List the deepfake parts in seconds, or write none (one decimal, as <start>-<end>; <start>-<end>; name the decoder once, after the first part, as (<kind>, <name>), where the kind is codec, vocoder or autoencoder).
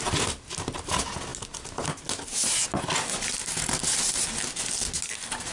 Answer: none